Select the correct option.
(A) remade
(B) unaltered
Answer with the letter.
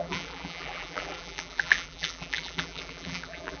A